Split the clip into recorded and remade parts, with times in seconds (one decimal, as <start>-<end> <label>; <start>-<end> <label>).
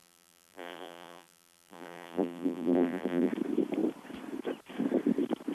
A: 0.0-3.3 remade; 3.3-5.5 recorded